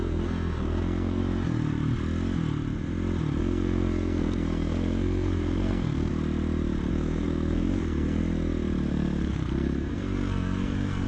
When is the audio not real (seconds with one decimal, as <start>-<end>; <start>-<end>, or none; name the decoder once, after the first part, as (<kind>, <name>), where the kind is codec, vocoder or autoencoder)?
0.0-1.2 (codec, SNAC); 3.4-6.1; 6.9-8.2; 8.9-11.1